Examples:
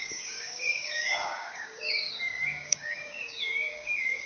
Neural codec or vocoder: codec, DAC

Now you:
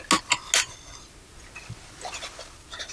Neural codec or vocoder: none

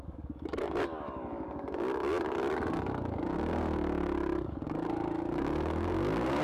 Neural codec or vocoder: codec, DAC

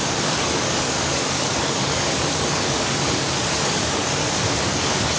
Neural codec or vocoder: codec, DAC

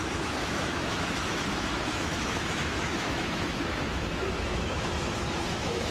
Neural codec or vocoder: autoencoder, DAC-VAE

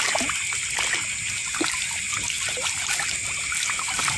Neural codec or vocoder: none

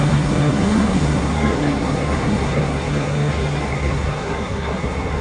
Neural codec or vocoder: codec, SNAC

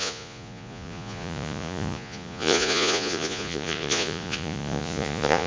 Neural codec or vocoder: vocoder, Vocos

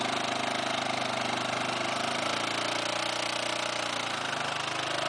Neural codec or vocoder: none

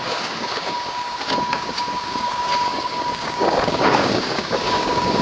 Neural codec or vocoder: codec, DAC